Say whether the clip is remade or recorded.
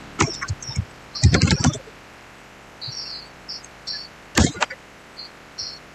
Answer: recorded